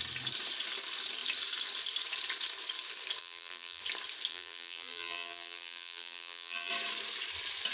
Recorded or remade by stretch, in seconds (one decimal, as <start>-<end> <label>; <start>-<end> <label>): 0.0-3.2 recorded; 3.2-3.8 remade; 3.8-4.3 recorded; 4.3-6.7 remade; 6.7-7.7 recorded